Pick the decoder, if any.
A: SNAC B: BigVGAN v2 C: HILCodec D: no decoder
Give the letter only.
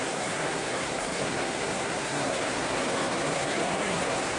A